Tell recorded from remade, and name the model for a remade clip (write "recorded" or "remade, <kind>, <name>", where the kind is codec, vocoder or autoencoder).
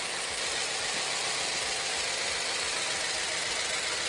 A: recorded